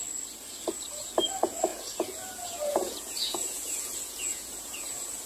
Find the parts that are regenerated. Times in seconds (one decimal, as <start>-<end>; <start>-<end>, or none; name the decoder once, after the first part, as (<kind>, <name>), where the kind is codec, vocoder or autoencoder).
1.7-5.3 (vocoder, Vocos)